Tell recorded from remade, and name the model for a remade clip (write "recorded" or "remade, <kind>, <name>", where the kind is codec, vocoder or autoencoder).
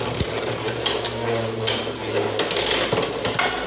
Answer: recorded